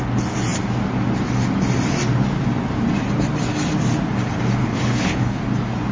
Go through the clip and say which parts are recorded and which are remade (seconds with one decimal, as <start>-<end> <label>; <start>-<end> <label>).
0.0-4.6 recorded; 4.6-5.4 remade; 5.4-5.9 recorded